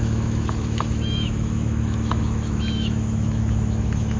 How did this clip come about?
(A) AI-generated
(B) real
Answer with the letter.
A